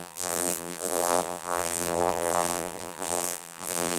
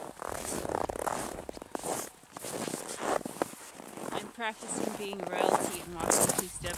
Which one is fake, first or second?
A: first